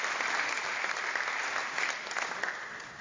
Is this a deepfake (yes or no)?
no